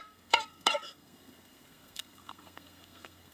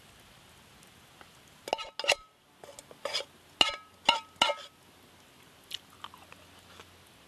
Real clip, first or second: second